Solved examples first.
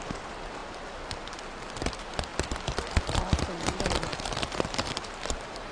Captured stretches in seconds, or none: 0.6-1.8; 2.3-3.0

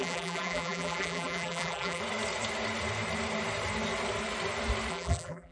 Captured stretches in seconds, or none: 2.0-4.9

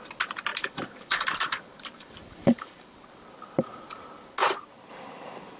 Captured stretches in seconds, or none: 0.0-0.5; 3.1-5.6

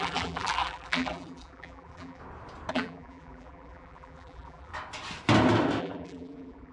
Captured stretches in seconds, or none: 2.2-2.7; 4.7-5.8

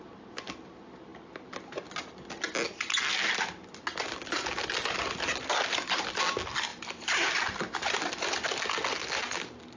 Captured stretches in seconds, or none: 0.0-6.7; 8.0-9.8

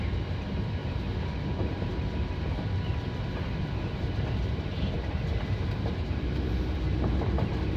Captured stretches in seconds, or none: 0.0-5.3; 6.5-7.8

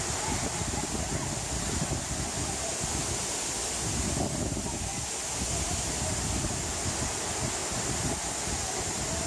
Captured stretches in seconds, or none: 0.0-9.3

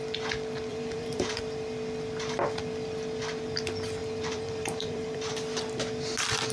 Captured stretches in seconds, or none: 0.0-0.7; 1.4-4.0; 5.3-6.5